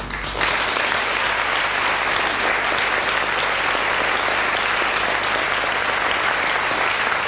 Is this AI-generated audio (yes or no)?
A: no